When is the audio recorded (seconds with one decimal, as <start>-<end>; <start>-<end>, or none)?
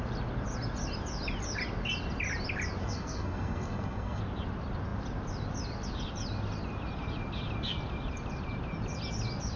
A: 0.0-2.8; 4.2-9.6